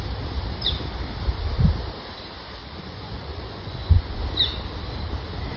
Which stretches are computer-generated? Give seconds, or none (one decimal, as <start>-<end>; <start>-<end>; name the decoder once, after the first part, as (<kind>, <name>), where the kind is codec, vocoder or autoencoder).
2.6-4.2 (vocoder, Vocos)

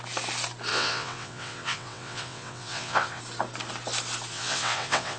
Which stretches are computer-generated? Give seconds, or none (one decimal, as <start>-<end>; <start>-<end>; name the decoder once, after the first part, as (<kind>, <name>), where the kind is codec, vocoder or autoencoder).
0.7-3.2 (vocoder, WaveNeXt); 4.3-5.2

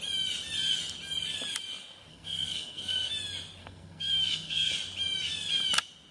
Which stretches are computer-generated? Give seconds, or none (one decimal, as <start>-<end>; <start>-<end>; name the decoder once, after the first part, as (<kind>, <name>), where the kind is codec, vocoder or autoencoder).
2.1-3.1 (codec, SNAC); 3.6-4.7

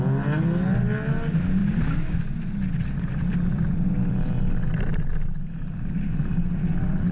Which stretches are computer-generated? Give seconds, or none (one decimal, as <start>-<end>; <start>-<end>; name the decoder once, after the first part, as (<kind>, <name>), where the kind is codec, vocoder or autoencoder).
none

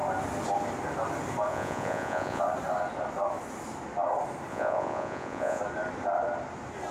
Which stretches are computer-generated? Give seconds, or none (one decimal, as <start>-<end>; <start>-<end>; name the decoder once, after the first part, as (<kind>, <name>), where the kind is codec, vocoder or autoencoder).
1.5-2.4 (vocoder, Vocos); 4.5-5.6

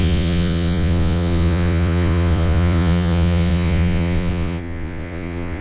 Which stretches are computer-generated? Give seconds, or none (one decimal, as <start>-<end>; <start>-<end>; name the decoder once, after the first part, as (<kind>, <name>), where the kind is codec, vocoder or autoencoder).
0.0-5.6 (vocoder, Vocos)